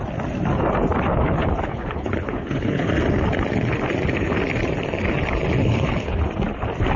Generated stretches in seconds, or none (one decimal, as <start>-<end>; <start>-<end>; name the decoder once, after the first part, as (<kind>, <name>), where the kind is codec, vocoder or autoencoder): 1.1-2.9 (codec, HILCodec); 5.6-6.2

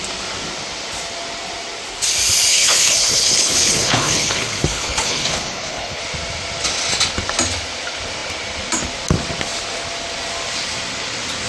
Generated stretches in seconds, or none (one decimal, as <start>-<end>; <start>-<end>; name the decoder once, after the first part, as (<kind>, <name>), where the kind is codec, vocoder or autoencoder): 2.5-6.0 (codec, HILCodec)

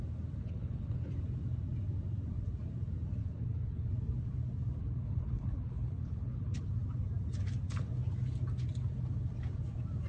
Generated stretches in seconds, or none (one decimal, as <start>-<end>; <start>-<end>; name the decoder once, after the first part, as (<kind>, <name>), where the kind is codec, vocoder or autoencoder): 0.4-1.1 (codec, HILCodec); 3.2-3.9; 4.8-6.6

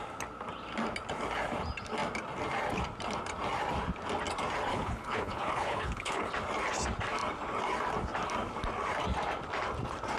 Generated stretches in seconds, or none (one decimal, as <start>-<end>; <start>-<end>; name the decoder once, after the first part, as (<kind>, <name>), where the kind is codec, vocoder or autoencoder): 4.7-6.3 (codec, HILCodec)

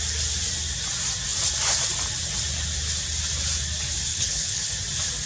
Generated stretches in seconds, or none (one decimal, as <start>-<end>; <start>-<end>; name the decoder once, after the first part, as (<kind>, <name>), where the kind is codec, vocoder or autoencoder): 4.1-4.7 (codec, HILCodec)

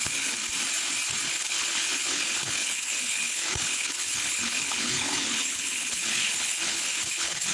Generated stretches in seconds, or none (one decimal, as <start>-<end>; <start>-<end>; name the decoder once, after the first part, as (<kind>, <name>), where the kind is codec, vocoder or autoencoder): 0.0-0.4 (codec, HILCodec); 1.3-7.5